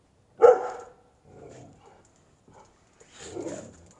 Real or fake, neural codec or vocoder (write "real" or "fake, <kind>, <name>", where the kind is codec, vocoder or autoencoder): real